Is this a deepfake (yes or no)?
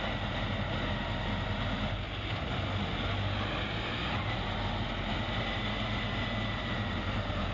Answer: no